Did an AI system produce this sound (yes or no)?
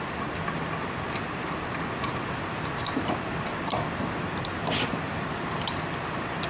no